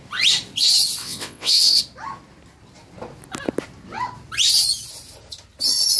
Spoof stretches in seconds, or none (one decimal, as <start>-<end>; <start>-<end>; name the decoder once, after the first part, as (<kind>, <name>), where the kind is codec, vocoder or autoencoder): 1.0-1.8 (vocoder, WaveNeXt)